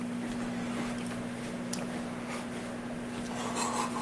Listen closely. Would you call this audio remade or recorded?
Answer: recorded